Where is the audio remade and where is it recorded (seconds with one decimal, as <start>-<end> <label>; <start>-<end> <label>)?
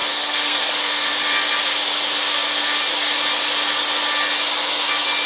0.0-1.1 remade; 1.1-5.3 recorded